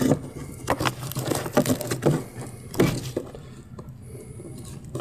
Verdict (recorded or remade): recorded